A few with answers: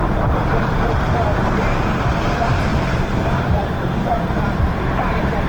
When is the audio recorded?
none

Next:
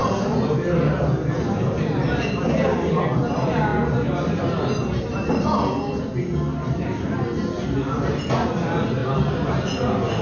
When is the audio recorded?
0.0-9.0

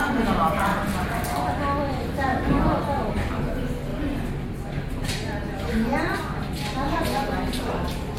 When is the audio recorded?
0.0-0.7; 1.5-8.2